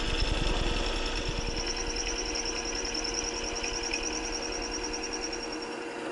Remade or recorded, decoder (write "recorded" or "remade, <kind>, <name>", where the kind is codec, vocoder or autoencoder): recorded